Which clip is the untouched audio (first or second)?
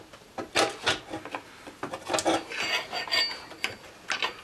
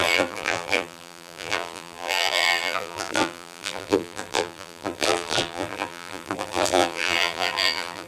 first